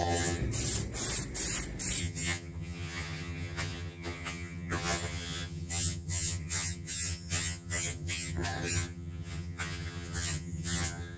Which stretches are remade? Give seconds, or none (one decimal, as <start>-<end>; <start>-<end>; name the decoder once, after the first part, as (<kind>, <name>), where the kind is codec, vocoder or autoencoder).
0.0-0.4 (vocoder, HiFi-GAN); 2.0-11.2